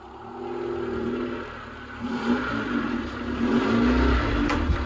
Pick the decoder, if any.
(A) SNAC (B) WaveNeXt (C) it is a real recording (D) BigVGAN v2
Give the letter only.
C